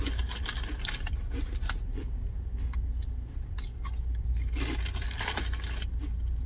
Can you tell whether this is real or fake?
real